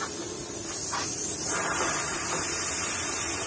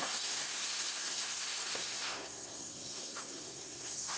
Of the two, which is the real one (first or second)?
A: first